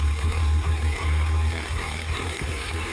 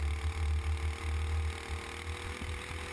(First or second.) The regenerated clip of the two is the first